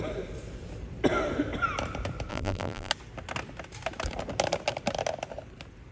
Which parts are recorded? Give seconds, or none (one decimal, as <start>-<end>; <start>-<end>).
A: 0.0-2.3; 2.9-5.9